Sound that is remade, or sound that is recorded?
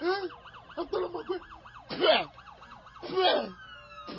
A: recorded